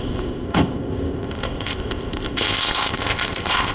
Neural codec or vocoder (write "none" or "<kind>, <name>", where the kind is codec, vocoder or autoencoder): codec, ZipCodec